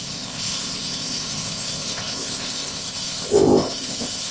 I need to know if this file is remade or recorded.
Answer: remade